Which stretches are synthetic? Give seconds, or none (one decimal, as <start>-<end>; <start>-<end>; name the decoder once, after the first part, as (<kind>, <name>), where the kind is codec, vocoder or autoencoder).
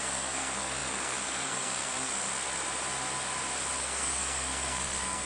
0.0-2.1 (codec, SNAC); 3.8-5.3